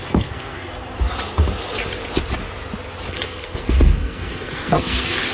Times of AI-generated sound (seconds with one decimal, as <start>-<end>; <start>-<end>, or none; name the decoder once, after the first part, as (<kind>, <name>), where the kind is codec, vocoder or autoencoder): 0.0-0.7 (codec, SNAC); 3.1-5.3